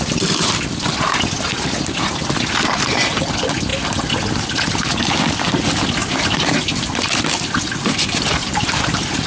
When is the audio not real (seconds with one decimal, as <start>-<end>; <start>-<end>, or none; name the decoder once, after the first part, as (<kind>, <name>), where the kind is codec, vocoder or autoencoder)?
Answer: 6.0-9.3 (vocoder, BigVGAN v2)